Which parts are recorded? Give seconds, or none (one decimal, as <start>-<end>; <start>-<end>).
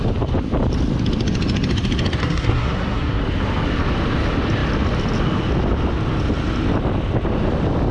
0.0-2.2; 3.2-7.9